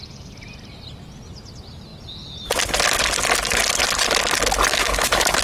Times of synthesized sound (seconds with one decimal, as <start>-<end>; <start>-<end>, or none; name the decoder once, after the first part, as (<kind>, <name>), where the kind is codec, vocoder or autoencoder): 4.7-5.4 (autoencoder, DAC-VAE)